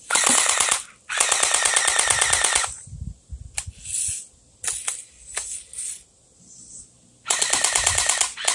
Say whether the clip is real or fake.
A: real